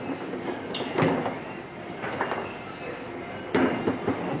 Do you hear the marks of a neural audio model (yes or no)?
yes